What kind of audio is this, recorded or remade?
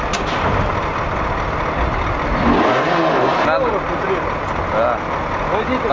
recorded